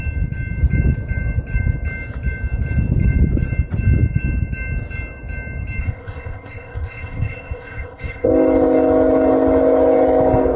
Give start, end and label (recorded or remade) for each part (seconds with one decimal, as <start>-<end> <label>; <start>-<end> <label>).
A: 0.0-5.8 recorded; 5.8-8.3 remade; 8.3-10.6 recorded